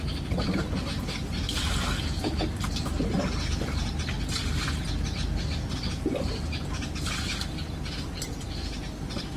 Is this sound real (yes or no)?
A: yes